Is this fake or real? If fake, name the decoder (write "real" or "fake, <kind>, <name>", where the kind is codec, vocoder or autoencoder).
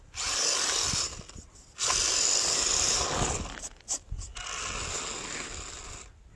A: real